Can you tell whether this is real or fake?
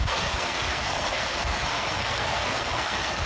fake